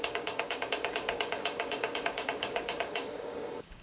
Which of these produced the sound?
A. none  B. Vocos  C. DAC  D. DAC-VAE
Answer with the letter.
C